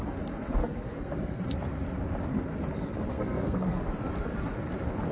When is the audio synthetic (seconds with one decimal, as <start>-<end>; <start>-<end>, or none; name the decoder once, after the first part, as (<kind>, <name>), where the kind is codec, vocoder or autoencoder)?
0.6-1.4 (codec, SNAC); 3.1-3.8